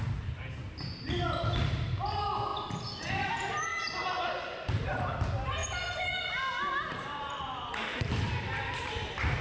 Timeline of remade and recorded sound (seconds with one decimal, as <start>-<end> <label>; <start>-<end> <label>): 0.0-9.4 recorded